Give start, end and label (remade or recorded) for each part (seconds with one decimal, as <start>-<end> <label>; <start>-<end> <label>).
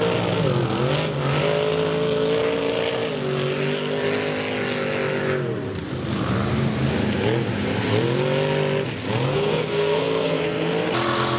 0.0-9.3 recorded; 9.3-10.7 remade; 10.7-11.4 recorded